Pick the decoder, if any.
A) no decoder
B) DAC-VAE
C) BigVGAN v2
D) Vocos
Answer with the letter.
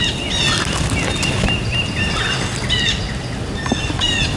C